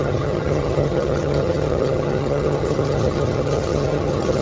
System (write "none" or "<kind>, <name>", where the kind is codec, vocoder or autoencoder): vocoder, HiFi-GAN